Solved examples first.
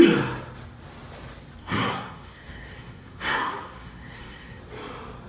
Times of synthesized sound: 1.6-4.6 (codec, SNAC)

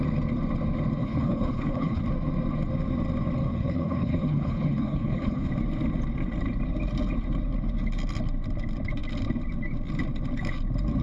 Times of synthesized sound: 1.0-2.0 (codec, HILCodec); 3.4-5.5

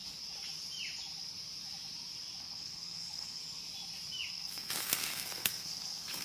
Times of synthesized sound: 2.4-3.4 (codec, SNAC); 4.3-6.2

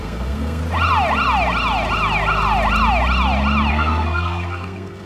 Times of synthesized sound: 0.0-0.6 (codec, SNAC); 3.7-5.1

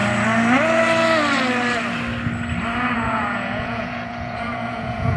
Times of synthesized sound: 2.8-5.2 (vocoder, Vocos)

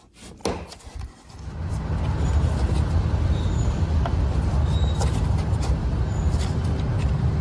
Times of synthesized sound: none